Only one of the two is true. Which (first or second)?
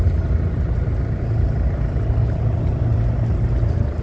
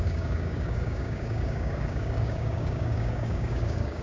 first